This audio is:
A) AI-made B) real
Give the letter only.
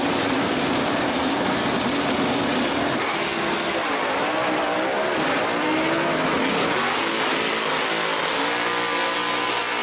B